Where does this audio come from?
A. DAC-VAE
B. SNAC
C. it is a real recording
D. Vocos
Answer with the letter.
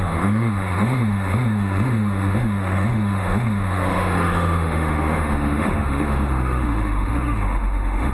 A